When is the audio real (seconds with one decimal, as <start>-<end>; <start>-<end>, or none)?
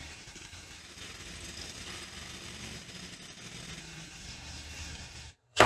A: 0.8-3.8